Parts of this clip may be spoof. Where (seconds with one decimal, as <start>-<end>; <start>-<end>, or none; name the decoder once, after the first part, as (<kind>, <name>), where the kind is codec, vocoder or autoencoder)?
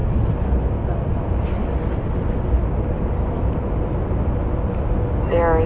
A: none